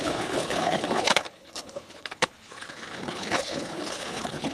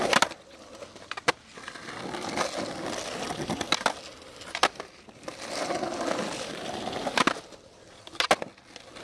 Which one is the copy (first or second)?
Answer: first